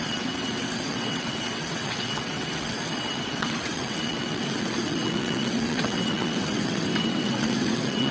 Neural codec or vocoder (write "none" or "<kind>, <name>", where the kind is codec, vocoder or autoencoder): vocoder, WaveNeXt